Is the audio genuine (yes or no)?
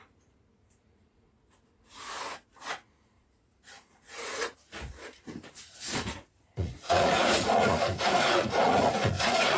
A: no